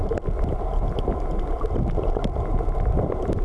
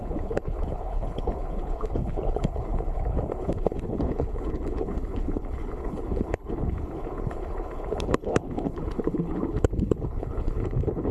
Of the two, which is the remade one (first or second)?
second